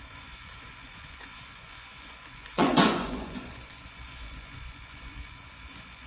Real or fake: fake